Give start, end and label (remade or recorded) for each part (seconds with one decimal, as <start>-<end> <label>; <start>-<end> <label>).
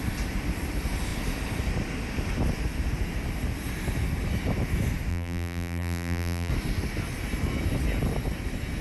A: 0.0-5.1 recorded; 5.1-6.5 remade; 6.5-8.8 recorded